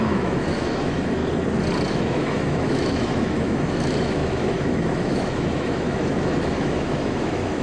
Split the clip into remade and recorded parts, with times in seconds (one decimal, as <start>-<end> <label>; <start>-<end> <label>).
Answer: 0.0-1.2 remade; 1.2-1.9 recorded; 1.9-7.6 remade